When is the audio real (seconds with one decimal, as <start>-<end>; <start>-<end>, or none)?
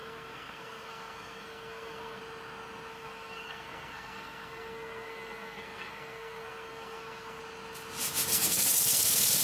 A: 2.2-2.9; 7.4-8.3